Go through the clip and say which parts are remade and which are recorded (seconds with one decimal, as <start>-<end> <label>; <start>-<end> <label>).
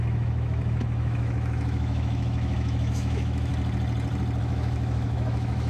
0.0-3.5 remade; 3.5-4.4 recorded; 4.4-5.7 remade